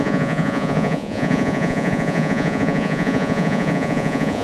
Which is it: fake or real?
fake